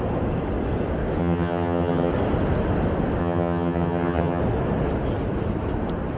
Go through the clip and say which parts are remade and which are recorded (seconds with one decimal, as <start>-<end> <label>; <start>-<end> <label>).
0.0-1.2 recorded; 1.2-2.1 remade; 2.1-3.2 recorded; 3.2-4.4 remade; 4.4-6.2 recorded